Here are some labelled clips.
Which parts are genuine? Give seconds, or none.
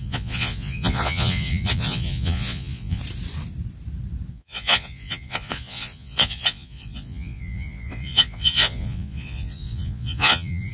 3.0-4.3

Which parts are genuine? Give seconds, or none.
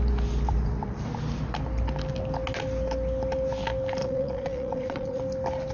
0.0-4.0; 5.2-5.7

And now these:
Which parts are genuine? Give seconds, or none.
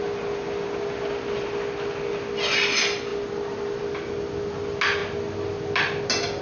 0.0-6.4